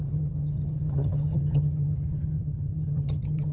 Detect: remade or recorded remade